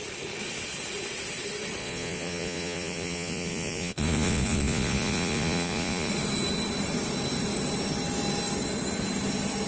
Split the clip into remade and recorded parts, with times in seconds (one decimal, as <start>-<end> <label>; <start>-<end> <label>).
0.0-1.8 recorded; 1.8-6.1 remade; 6.1-9.7 recorded